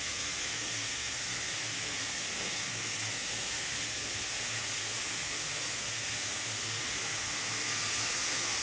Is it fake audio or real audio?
fake